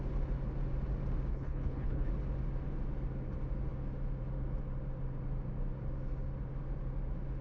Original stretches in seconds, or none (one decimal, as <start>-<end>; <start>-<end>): 0.0-1.3; 2.1-7.4